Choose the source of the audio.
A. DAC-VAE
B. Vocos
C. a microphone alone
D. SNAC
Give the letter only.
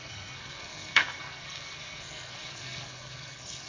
D